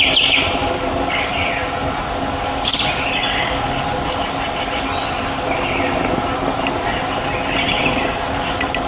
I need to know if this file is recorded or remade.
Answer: recorded